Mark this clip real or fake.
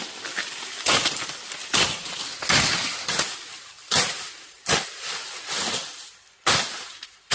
real